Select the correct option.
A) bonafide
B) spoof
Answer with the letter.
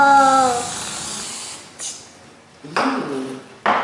A